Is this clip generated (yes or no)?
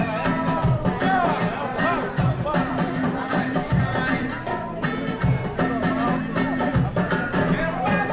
yes